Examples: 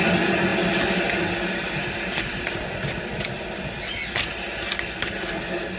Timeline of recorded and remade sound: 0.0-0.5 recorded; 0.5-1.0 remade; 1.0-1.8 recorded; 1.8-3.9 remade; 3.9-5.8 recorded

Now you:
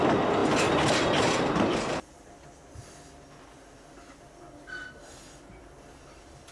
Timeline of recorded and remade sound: 0.0-6.5 recorded

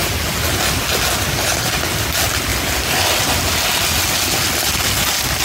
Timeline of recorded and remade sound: 0.0-5.4 recorded